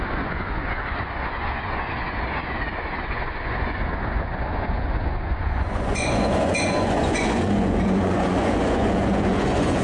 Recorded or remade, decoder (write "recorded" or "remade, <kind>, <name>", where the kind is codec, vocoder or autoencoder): remade, vocoder, Vocos